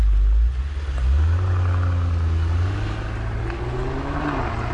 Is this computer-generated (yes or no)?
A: no